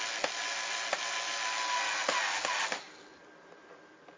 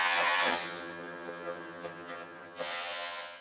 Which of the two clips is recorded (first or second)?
first